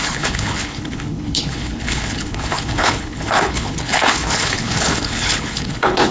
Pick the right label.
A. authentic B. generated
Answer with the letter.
B